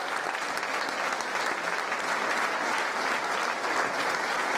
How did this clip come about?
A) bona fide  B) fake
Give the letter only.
A